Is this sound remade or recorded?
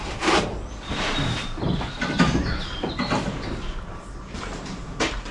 recorded